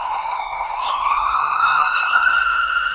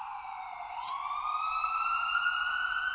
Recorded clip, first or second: second